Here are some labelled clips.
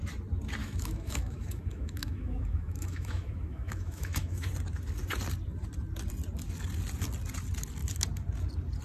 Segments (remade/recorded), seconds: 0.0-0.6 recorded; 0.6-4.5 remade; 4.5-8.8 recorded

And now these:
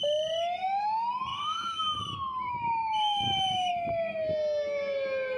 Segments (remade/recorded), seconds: 0.0-1.3 recorded; 1.3-2.0 remade; 2.0-2.8 recorded; 2.8-3.7 remade; 3.7-5.4 recorded

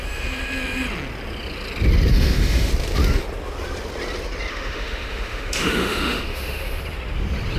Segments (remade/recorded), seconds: 0.0-2.1 recorded; 2.1-2.7 remade; 2.7-4.5 recorded; 4.5-6.8 remade; 6.8-7.6 recorded

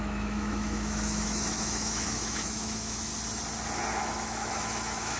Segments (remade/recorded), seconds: 0.0-3.1 remade; 3.1-4.0 recorded; 4.0-5.2 remade

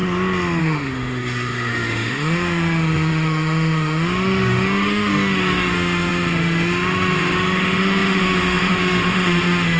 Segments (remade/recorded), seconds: 0.0-0.6 recorded; 0.6-9.8 remade